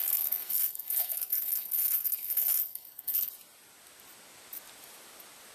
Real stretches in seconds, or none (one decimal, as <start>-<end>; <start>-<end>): 3.3-5.5